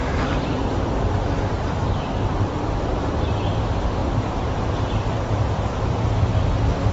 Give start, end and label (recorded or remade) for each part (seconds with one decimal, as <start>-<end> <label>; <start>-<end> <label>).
0.0-3.1 remade; 3.1-4.0 recorded; 4.0-6.3 remade; 6.3-6.9 recorded